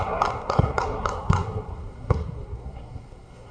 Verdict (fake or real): fake